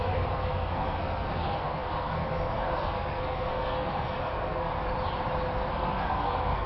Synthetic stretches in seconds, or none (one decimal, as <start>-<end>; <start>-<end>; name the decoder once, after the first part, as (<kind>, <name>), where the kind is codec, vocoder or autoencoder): 0.0-4.7 (codec, SNAC); 5.7-6.7